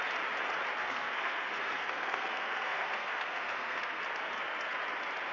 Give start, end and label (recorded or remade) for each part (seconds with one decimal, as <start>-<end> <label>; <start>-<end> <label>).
0.0-0.8 recorded; 0.8-4.0 remade; 4.0-5.3 recorded